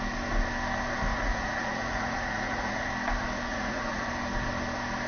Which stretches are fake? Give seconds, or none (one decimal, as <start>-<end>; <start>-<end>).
1.1-2.9; 3.5-4.1